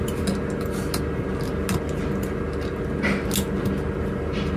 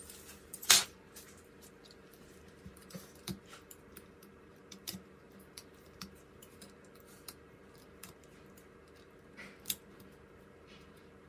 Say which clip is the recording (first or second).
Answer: first